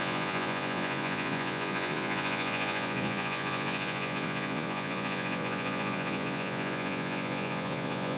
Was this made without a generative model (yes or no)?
no